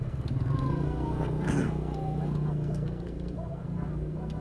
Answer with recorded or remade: remade